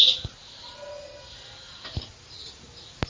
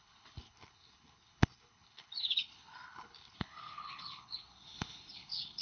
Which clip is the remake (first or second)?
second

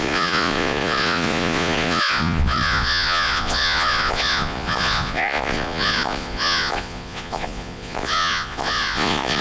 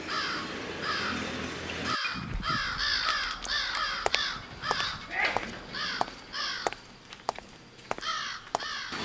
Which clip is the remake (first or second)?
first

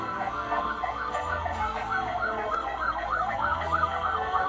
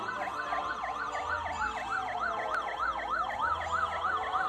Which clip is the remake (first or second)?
first